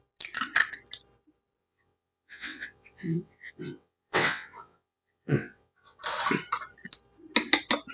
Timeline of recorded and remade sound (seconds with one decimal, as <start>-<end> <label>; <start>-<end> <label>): 0.0-1.6 recorded; 1.6-6.0 remade; 6.0-7.9 recorded